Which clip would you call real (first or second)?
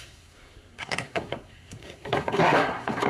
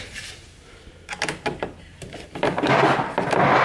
second